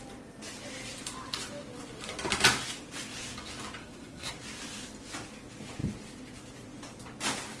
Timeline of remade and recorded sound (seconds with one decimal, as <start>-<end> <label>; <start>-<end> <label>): 0.0-3.8 recorded; 3.8-4.3 remade; 4.3-7.6 recorded